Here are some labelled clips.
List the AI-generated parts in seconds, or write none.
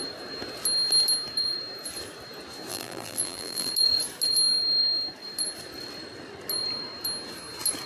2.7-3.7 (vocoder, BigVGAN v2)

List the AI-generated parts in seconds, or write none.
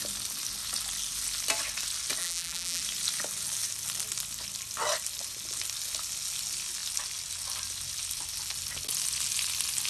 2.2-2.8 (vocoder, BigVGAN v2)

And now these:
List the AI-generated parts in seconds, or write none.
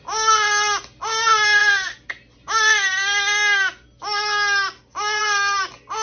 none